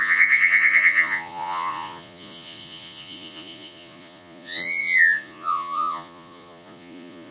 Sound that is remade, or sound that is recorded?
remade